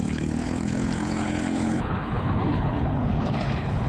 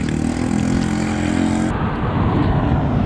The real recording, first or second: second